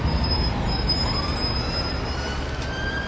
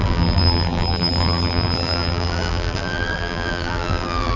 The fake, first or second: second